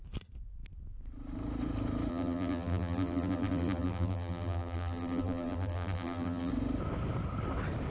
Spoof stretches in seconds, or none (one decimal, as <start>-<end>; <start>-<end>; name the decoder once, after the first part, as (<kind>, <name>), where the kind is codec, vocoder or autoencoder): 2.1-6.5 (vocoder, BigVGAN v2)